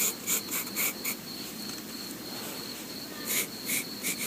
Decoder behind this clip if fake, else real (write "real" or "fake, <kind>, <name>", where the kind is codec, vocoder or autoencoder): fake, vocoder, BigVGAN v2